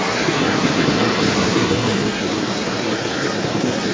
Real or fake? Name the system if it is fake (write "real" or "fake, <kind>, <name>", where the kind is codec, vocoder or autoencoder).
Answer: fake, codec, SNAC